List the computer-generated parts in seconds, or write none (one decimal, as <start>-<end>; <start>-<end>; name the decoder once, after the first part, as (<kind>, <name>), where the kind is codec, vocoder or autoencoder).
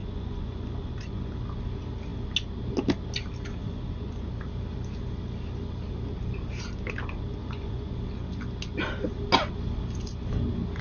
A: 0.0-1.3 (vocoder, Vocos); 3.6-4.3; 7.4-7.9